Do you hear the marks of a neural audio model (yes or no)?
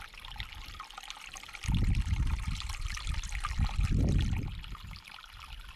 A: no